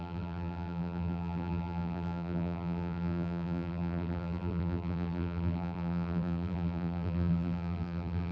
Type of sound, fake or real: fake